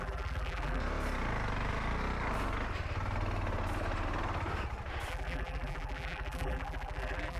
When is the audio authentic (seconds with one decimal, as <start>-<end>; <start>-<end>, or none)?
0.8-5.1